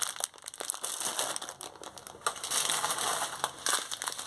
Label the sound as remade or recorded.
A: recorded